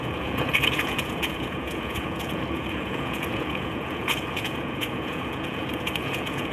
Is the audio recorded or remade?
remade